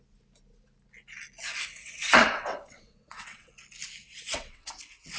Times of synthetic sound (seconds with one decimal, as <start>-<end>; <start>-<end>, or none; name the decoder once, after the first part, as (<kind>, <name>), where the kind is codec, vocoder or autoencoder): 1.8-3.5 (vocoder, WaveNeXt); 4.0-4.7